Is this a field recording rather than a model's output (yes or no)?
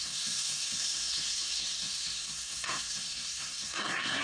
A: no